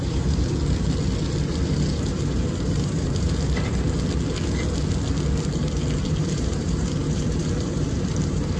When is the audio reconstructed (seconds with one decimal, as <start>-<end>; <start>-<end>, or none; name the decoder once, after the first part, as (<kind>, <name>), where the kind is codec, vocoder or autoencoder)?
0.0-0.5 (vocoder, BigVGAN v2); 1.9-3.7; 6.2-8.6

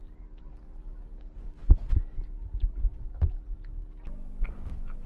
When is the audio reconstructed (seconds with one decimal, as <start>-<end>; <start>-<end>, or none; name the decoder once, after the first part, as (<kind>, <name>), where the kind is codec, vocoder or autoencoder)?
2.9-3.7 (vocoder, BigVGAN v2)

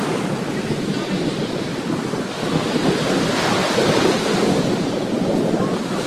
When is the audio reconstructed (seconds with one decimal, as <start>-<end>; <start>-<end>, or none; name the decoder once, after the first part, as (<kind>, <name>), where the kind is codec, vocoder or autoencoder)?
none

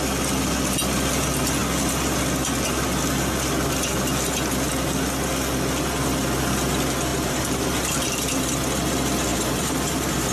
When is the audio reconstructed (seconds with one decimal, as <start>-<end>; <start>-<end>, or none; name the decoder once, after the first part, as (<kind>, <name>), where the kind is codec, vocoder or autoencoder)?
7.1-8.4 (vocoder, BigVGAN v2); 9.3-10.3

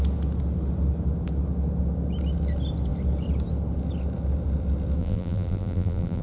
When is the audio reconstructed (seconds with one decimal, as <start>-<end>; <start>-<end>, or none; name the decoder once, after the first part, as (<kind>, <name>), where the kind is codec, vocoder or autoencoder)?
5.0-6.2 (vocoder, BigVGAN v2)

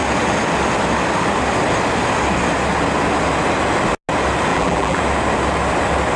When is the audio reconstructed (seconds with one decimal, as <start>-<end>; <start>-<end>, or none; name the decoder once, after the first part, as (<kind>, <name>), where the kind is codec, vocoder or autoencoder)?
4.5-5.0 (vocoder, BigVGAN v2)

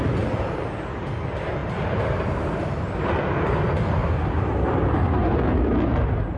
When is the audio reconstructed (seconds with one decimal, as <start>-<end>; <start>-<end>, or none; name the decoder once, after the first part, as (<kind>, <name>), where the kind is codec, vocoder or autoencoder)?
1.6-3.0 (vocoder, BigVGAN v2); 4.0-5.3